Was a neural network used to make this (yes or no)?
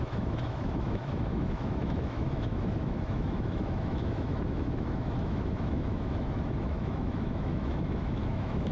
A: yes